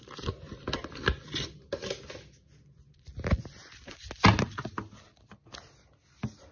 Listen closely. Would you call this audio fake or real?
real